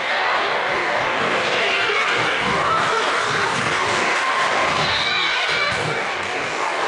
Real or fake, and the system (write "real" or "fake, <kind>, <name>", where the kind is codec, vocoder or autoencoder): fake, codec, DAC